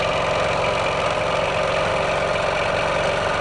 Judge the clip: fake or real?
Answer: real